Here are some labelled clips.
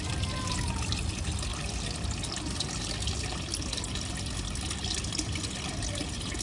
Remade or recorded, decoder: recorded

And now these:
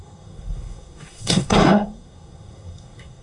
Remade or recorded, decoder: remade, codec, SNAC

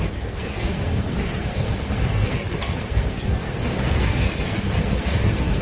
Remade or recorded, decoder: remade, codec, SNAC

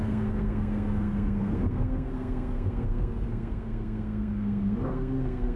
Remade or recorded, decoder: remade, codec, SNAC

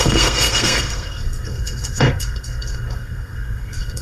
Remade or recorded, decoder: remade, codec, SNAC